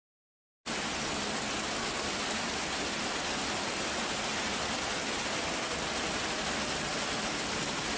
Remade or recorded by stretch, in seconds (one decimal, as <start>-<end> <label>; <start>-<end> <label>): 0.0-8.0 recorded